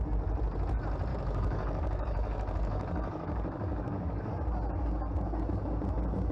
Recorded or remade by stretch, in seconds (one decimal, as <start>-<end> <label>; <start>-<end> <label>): 0.0-1.1 recorded; 1.1-4.3 remade; 4.3-6.3 recorded